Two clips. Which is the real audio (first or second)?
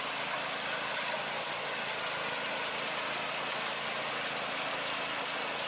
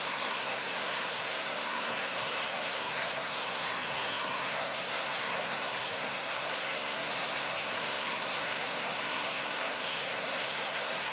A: first